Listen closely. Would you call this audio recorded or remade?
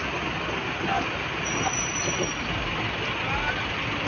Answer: recorded